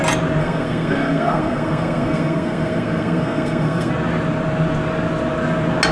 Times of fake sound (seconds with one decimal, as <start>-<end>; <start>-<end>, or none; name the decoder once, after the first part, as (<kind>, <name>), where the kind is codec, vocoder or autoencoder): 0.4-3.9 (codec, SNAC)